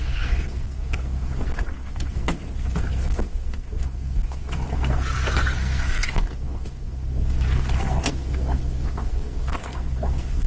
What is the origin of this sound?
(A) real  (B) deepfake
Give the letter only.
B